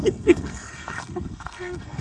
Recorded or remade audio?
remade